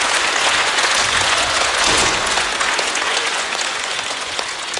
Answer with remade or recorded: remade